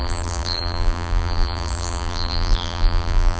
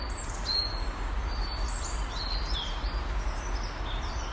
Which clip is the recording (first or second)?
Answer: second